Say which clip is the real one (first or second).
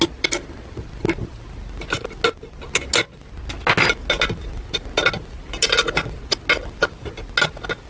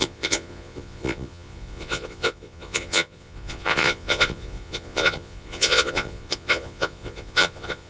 first